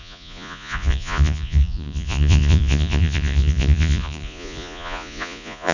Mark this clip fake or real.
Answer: fake